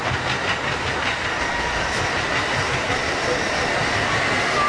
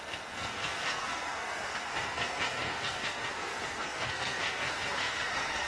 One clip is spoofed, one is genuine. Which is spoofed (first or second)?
second